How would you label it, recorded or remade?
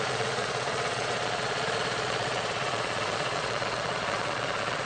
remade